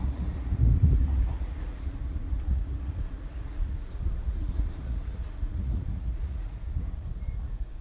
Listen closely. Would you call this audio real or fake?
fake